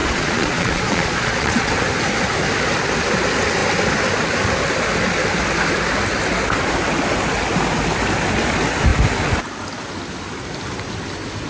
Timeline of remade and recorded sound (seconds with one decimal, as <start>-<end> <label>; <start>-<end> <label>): 0.0-1.7 remade; 1.7-11.5 recorded